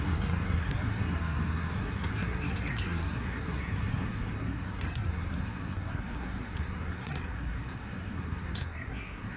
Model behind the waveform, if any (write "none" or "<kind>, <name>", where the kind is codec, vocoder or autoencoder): codec, SNAC